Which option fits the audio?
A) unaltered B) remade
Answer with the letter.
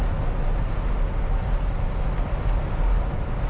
A